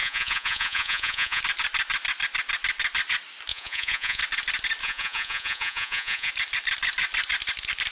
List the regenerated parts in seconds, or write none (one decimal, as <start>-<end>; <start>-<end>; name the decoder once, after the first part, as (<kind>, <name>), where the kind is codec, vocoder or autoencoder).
0.0-1.4 (vocoder, Vocos); 3.5-4.2; 4.8-6.3